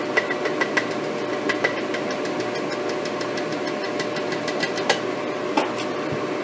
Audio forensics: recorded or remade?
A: recorded